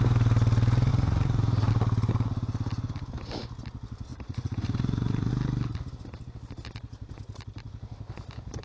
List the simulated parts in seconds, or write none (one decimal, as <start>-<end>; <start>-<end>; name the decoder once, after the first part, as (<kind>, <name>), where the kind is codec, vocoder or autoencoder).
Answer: 0.9-1.7 (vocoder, Vocos); 4.1-5.3